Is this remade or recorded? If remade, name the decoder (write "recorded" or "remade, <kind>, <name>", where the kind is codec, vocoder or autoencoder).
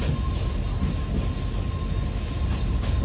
recorded